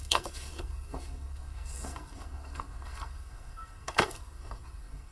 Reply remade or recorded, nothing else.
remade